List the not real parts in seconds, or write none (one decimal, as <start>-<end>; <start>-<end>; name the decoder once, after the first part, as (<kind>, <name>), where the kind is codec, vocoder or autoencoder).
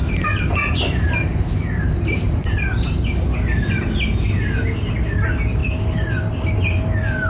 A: 0.6-2.5 (vocoder, BigVGAN v2)